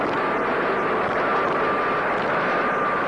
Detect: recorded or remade recorded